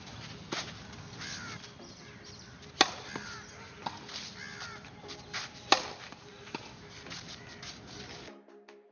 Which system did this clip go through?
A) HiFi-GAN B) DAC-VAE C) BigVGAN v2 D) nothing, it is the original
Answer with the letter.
D